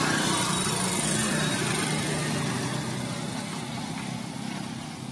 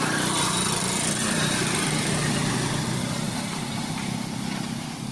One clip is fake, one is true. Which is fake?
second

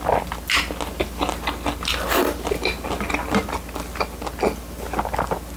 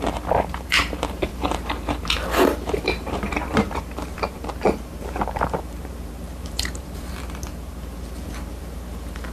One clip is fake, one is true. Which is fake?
second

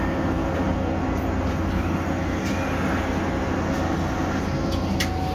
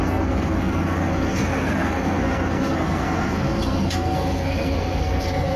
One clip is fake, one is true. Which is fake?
second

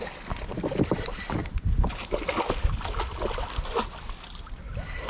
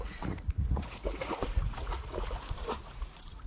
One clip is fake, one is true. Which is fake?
second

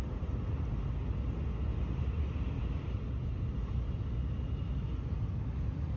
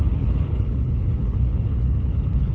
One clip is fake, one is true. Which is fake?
second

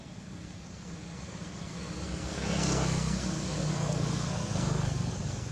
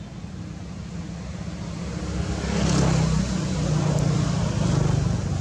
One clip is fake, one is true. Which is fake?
first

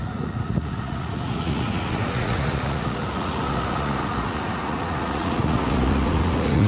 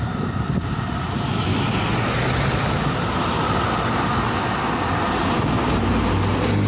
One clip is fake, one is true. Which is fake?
first